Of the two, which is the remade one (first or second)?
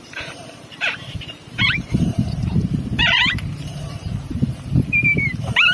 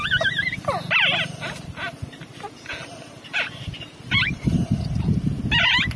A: first